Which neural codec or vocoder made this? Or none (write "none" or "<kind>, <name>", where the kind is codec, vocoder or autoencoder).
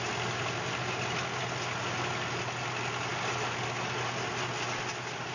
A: none